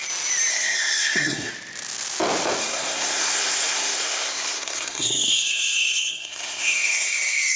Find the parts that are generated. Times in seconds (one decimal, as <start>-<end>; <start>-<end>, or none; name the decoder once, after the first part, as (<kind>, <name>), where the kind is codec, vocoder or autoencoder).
0.5-1.5 (codec, SNAC); 2.6-7.6